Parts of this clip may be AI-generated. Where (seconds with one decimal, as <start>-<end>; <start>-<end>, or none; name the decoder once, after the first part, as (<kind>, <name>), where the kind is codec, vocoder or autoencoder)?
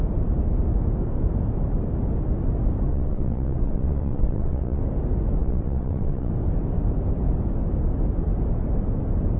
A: 2.9-4.8 (vocoder, WaveNeXt); 5.4-6.3